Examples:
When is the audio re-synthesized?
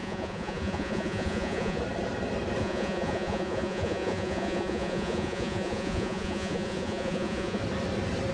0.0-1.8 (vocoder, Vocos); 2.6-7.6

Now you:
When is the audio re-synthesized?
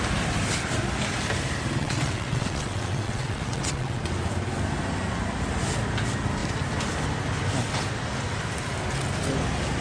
1.8-4.0 (vocoder, WaveNeXt)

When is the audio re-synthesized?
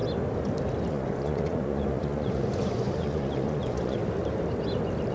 0.9-4.0 (vocoder, Vocos)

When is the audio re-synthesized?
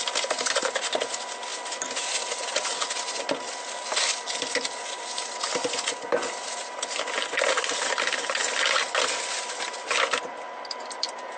none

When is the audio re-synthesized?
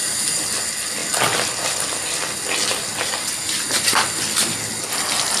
none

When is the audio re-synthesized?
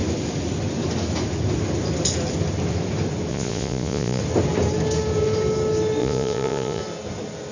3.3-4.2 (vocoder, Vocos); 6.0-6.8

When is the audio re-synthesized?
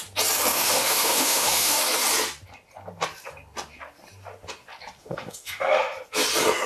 0.5-1.8 (autoencoder, DAC-VAE); 5.0-5.8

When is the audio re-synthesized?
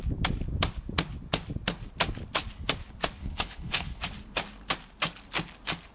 3.2-4.0 (codec, HILCodec)